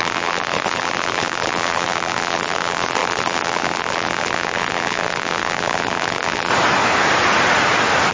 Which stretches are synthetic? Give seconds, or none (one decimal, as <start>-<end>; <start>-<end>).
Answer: 0.0-6.5